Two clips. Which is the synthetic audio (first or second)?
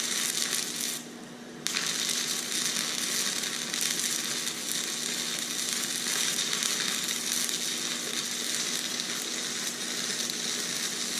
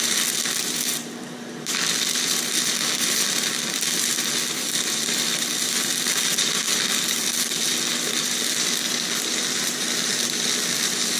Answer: second